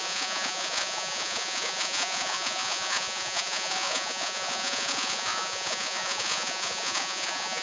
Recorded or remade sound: remade